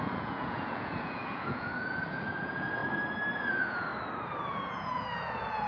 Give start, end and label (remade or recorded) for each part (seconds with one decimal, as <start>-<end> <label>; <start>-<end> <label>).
0.0-2.8 remade; 2.8-3.5 recorded; 3.5-3.9 remade; 3.9-4.5 recorded; 4.5-5.7 remade